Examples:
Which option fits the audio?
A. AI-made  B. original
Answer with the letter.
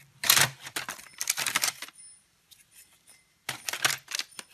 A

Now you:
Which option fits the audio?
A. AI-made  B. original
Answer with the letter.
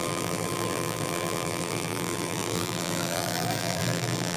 A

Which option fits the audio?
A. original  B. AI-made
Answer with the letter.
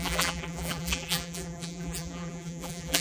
B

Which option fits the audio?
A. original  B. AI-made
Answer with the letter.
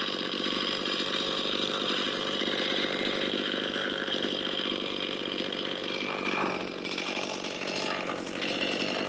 B